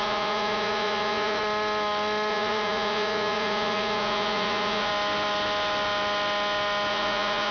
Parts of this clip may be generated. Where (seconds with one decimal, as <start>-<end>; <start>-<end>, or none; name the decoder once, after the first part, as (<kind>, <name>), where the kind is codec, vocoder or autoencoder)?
0.0-1.4 (vocoder, Vocos); 2.3-4.9; 6.9-7.5